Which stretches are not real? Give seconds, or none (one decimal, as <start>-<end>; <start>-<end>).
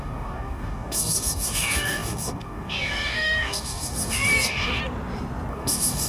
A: 0.0-4.8; 5.5-6.1